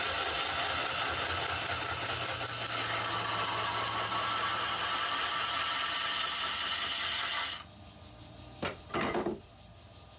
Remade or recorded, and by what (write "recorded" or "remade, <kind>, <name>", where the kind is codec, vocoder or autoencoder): recorded